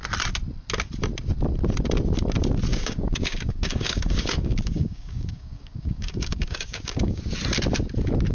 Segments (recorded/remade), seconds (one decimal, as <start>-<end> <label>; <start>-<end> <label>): 0.0-2.7 recorded; 2.7-7.2 remade; 7.2-8.3 recorded